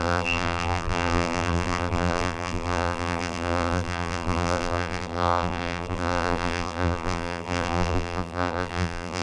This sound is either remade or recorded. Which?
remade